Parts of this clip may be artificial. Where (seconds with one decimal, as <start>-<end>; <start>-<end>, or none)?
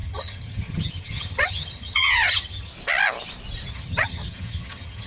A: 0.0-2.7; 3.7-5.1